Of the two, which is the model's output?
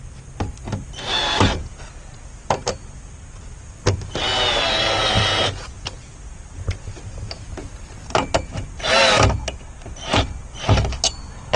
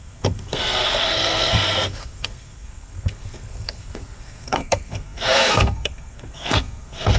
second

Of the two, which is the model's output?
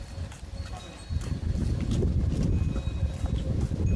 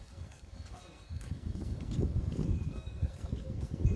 second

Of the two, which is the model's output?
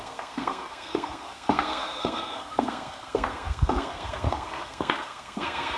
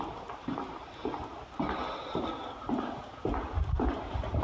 first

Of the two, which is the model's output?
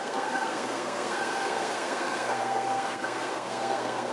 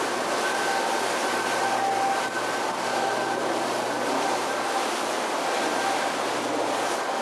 first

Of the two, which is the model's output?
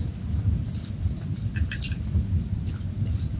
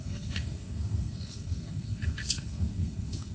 second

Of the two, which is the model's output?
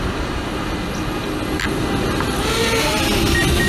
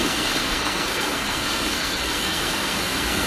second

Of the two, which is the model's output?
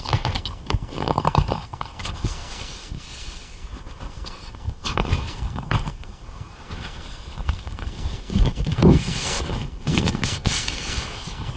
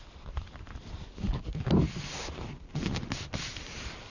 first